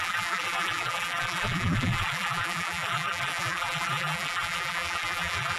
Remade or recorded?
remade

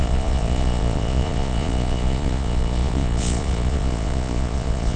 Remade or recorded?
remade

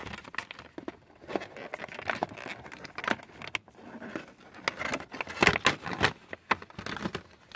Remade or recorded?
recorded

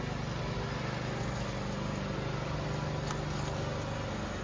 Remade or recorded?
recorded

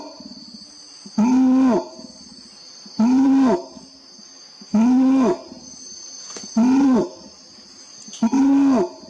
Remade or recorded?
recorded